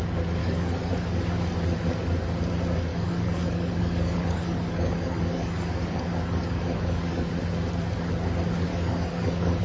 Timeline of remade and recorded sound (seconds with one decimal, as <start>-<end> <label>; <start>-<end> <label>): 0.0-0.4 recorded; 0.4-0.9 remade; 0.9-2.9 recorded; 2.9-7.3 remade; 7.3-8.7 recorded; 8.7-9.6 remade